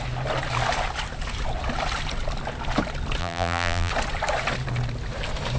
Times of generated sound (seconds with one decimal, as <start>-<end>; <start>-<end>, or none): 3.2-3.9